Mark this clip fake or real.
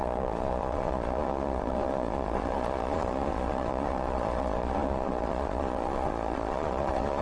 fake